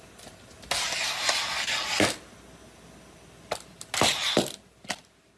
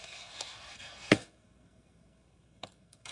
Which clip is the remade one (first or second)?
second